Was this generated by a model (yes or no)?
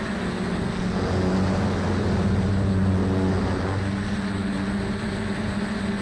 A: no